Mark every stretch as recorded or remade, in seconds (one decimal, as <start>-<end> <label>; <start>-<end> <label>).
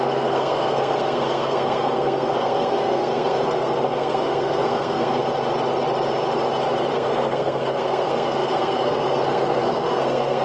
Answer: 0.0-5.2 remade; 5.2-6.9 recorded; 6.9-10.4 remade